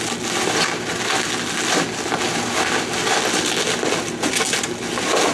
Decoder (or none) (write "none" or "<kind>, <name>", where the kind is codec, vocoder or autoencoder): none